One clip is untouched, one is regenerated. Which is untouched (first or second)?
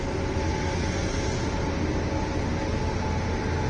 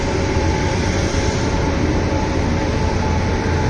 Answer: first